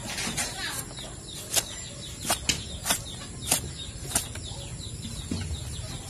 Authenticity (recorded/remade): recorded